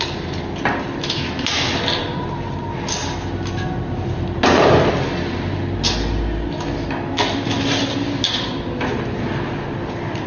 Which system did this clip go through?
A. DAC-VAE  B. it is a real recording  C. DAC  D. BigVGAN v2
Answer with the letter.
B